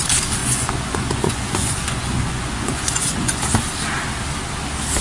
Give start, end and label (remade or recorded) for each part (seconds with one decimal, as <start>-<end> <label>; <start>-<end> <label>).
0.0-0.4 recorded; 0.4-3.4 remade; 3.4-5.0 recorded